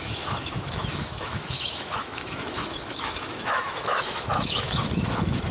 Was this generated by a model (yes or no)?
yes